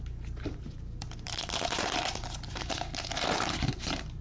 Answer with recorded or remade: remade